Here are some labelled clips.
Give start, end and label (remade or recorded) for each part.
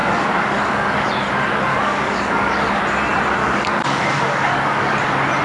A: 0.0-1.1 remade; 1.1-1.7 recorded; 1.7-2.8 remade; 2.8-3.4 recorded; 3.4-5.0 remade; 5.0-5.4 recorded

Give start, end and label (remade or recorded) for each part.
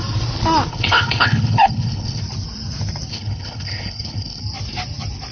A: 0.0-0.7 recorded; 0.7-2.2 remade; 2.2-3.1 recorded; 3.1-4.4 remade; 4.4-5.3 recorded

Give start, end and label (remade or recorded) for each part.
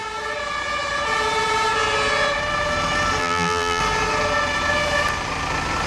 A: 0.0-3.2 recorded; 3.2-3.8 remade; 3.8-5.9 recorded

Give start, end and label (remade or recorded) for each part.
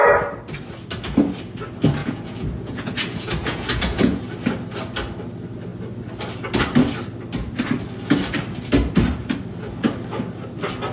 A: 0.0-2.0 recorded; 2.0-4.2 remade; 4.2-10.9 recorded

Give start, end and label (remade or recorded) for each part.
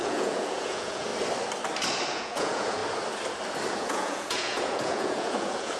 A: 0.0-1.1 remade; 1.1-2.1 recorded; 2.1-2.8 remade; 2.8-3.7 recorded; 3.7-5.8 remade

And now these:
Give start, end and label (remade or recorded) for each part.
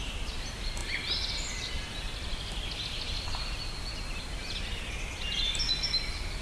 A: 0.0-6.4 recorded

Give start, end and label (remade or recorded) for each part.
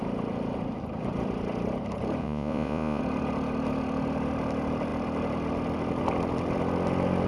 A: 0.0-2.2 recorded; 2.2-3.0 remade; 3.0-7.3 recorded